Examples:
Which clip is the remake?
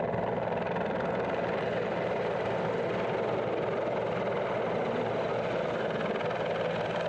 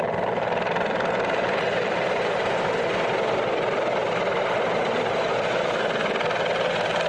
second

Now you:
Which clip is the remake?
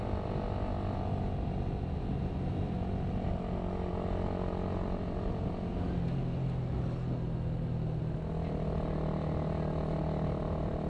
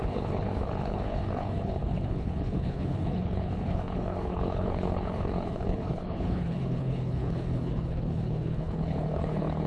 second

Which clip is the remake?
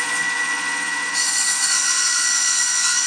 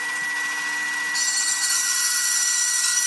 first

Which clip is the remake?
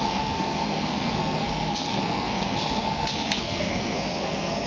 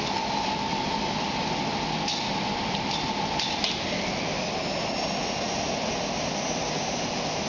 first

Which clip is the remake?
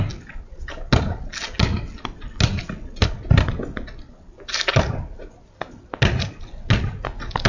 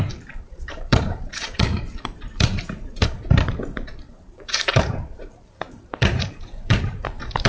second